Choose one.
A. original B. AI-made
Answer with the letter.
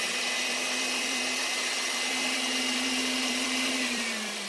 B